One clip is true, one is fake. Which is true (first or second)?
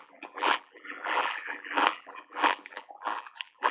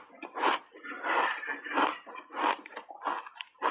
second